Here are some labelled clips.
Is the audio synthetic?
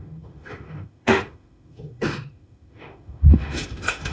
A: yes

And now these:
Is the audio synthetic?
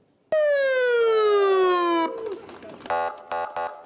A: no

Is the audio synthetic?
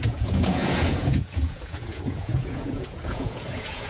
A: yes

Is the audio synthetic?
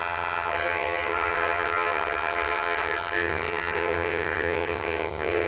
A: yes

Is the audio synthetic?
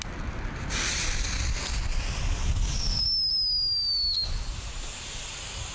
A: no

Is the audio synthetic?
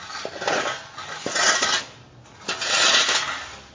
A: no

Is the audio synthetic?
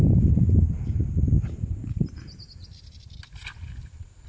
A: no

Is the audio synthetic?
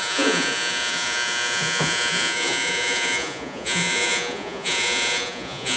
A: yes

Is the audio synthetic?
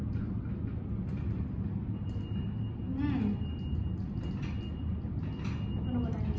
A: no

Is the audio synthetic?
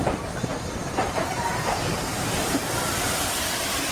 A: no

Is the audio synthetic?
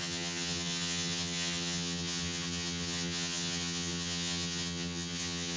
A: yes